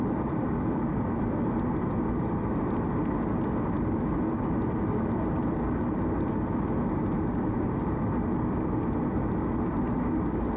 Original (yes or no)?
yes